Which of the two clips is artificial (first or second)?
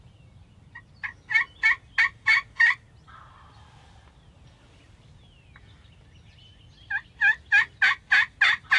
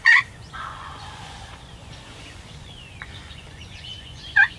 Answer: second